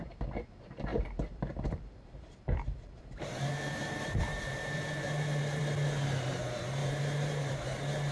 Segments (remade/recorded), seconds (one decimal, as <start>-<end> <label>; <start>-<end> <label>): 0.0-0.9 recorded; 0.9-5.6 remade; 5.6-6.8 recorded; 6.8-7.5 remade; 7.5-8.1 recorded